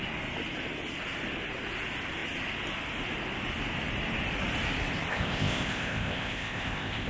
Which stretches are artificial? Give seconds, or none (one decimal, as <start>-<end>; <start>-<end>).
5.1-7.1